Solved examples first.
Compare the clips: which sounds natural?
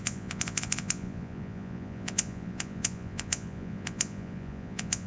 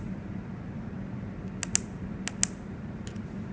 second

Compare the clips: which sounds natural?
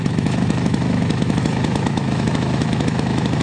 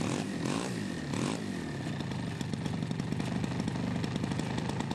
second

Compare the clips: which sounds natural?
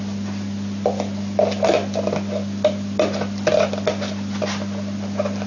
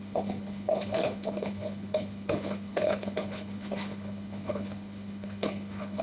first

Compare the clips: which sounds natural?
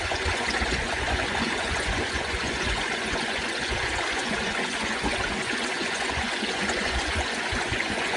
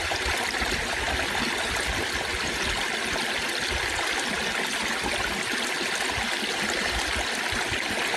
second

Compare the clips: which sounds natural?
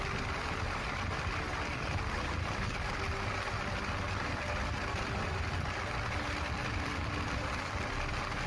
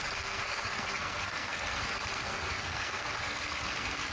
first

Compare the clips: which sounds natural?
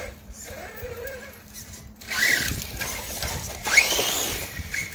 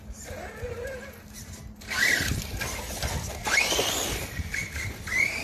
second